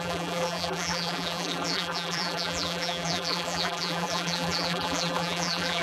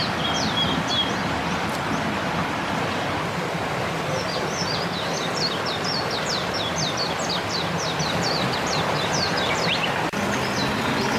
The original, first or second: second